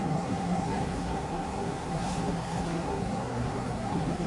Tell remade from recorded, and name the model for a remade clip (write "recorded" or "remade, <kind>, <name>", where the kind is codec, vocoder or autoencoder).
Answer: remade, codec, SNAC